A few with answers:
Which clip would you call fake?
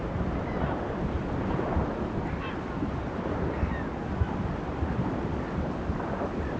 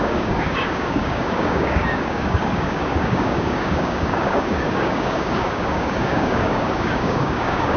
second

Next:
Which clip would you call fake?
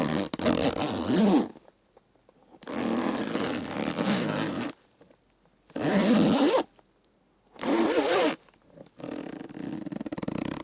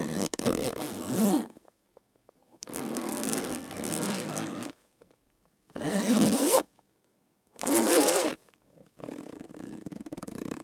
second